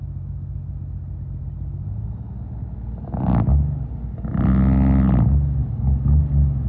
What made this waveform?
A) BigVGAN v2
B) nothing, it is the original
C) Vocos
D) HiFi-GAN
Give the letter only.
B